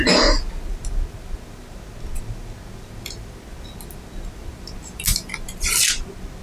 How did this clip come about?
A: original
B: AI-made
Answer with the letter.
A